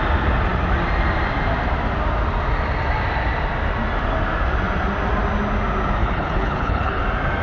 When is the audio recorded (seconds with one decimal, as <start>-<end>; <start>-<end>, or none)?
0.0-6.0; 7.0-7.4